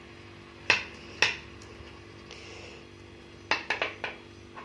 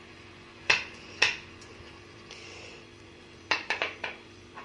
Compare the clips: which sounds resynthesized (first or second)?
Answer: second